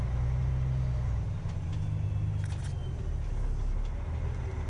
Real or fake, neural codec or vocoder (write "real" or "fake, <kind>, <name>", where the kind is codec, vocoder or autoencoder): real